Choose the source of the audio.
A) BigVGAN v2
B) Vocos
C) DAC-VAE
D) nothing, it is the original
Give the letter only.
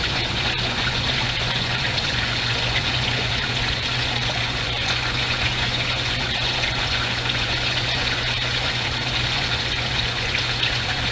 B